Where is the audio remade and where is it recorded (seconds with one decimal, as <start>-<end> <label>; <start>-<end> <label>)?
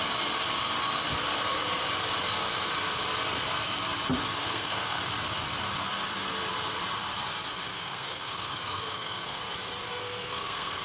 0.0-4.4 recorded; 4.4-5.1 remade; 5.1-7.7 recorded; 7.7-9.4 remade; 9.4-9.9 recorded; 9.9-10.8 remade